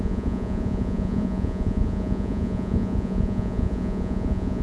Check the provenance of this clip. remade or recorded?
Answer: remade